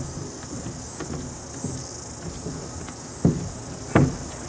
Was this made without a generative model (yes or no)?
yes